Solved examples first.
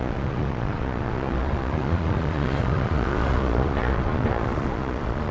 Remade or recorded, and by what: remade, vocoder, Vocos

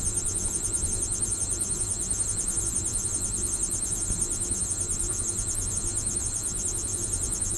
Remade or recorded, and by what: remade, vocoder, Vocos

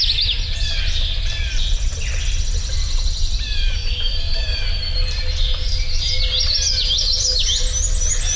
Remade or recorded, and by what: recorded